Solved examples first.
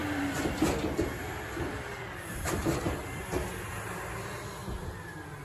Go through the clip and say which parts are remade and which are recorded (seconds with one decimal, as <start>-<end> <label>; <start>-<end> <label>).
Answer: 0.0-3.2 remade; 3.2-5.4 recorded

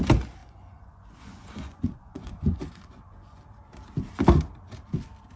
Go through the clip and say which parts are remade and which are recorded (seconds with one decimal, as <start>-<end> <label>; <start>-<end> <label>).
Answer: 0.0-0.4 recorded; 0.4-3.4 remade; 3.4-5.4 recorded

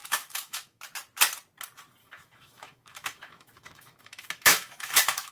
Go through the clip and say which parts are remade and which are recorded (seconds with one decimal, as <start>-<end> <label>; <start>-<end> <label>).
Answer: 0.0-0.8 remade; 0.8-2.0 recorded; 2.0-5.3 remade